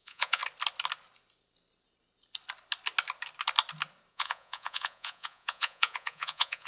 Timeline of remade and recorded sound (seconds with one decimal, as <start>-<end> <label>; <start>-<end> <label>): 0.0-0.4 remade; 0.4-4.1 recorded; 4.1-6.7 remade